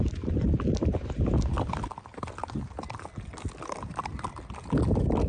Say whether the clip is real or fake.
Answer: real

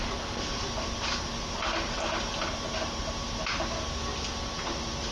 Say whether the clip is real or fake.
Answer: real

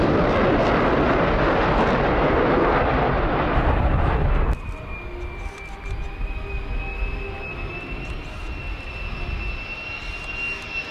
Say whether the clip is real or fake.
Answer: real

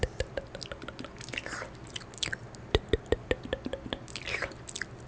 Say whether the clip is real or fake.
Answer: real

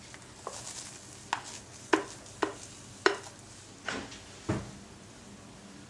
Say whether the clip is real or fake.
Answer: real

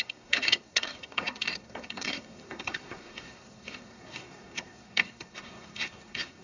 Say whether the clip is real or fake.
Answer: fake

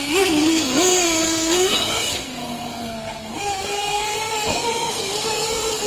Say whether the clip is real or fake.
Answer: fake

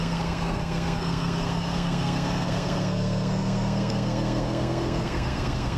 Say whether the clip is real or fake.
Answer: fake